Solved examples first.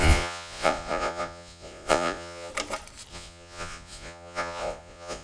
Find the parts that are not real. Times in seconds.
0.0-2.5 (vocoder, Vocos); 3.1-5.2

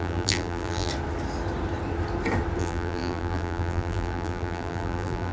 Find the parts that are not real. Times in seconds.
0.0-0.9 (vocoder, BigVGAN v2); 2.6-5.3

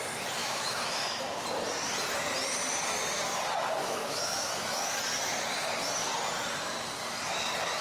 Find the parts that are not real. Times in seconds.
0.4-1.2 (autoencoder, DAC-VAE); 3.8-5.0

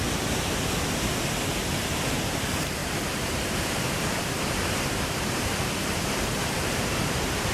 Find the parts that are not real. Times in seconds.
2.8-7.5 (vocoder, BigVGAN v2)

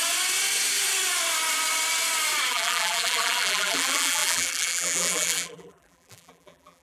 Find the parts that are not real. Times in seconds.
2.5-6.8 (vocoder, BigVGAN v2)

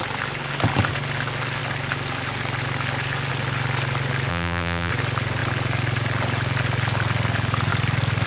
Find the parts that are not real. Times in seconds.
4.3-4.9 (vocoder, BigVGAN v2)

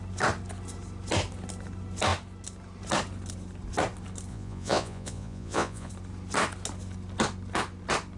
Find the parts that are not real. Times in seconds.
4.3-5.9 (vocoder, Vocos)